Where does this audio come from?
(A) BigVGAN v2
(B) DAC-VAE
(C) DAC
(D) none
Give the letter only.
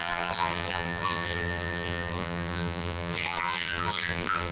A